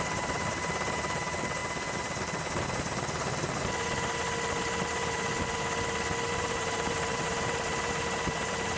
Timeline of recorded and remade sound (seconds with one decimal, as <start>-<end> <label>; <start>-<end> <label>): 0.0-1.6 remade; 1.6-6.3 recorded; 6.3-8.8 remade

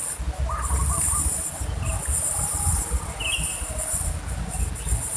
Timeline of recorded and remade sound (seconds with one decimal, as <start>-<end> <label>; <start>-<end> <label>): 0.0-0.8 recorded; 0.8-1.5 remade; 1.5-5.2 recorded

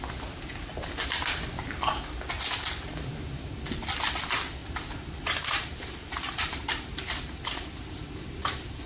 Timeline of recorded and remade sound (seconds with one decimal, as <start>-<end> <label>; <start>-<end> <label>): 0.0-4.6 recorded; 4.6-8.9 remade

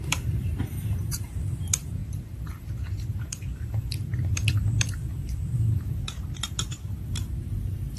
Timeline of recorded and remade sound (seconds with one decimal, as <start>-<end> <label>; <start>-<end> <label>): 0.0-8.0 remade

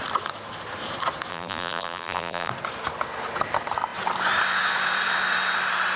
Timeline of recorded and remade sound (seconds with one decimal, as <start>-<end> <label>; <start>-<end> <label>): 0.0-1.3 recorded; 1.3-2.5 remade; 2.5-6.0 recorded